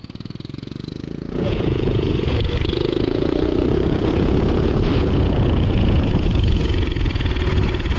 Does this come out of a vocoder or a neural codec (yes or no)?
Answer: yes